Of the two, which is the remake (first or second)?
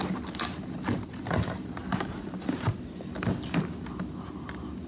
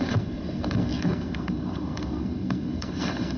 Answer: second